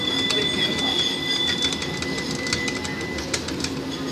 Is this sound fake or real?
real